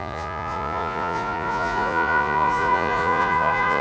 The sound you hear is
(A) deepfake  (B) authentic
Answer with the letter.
A